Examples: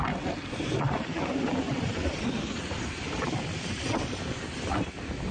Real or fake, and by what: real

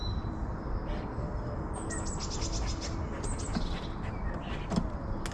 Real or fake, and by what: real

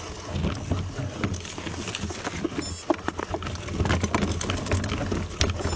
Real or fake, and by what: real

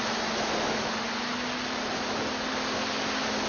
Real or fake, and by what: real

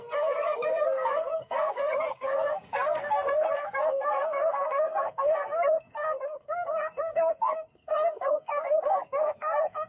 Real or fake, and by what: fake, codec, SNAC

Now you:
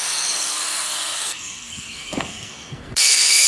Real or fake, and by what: fake, codec, SNAC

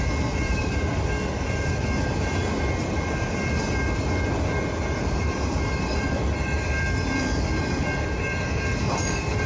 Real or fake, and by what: fake, vocoder, BigVGAN v2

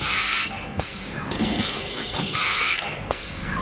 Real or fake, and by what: fake, codec, SNAC